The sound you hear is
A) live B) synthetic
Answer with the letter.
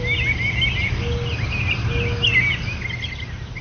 A